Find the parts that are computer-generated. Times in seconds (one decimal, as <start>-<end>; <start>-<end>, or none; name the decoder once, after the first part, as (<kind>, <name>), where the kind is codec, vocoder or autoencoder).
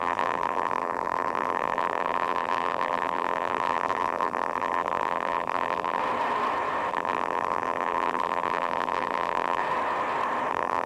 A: 0.0-6.0 (vocoder, BigVGAN v2); 6.9-9.6; 10.5-10.9